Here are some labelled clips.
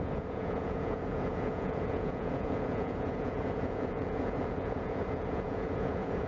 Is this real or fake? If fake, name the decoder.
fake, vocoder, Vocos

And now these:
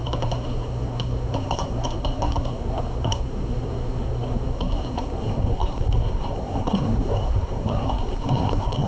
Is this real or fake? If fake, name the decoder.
fake, codec, SNAC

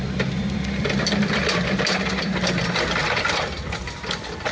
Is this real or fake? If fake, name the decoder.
fake, vocoder, BigVGAN v2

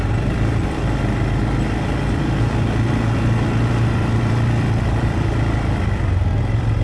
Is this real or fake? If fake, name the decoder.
fake, vocoder, BigVGAN v2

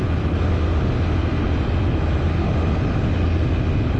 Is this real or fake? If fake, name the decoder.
real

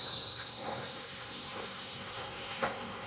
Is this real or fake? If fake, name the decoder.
fake, codec, SNAC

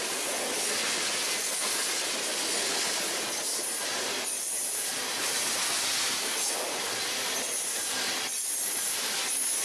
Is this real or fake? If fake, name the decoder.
real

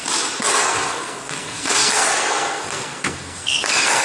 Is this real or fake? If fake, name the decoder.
fake, codec, SNAC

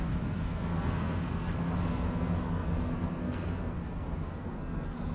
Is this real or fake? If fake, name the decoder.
fake, codec, SNAC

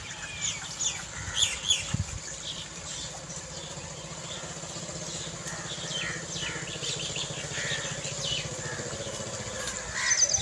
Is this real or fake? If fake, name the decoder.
real